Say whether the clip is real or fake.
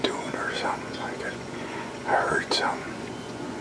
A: fake